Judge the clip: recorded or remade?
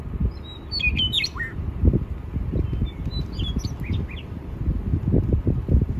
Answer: recorded